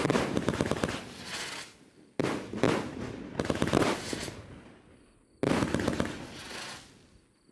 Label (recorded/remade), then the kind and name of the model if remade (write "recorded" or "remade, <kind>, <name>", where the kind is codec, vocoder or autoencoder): recorded